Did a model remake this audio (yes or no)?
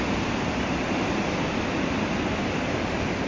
no